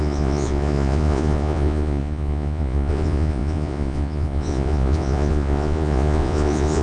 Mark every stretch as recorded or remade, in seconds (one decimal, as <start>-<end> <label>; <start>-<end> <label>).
0.0-6.8 remade